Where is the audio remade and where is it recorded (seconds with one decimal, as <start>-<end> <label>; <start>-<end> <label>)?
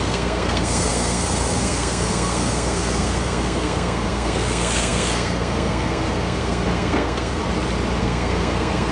0.0-7.4 remade; 7.4-8.0 recorded; 8.0-8.9 remade